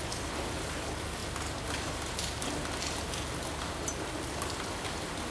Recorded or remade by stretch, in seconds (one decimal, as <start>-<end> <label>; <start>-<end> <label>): 0.0-5.3 recorded